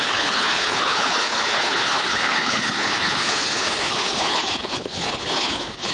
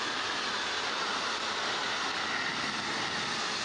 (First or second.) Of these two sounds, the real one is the second